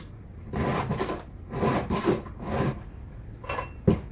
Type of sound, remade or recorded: recorded